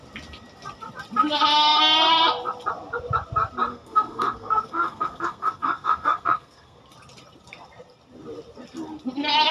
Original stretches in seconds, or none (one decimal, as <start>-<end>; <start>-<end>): 0.0-3.7; 6.8-9.5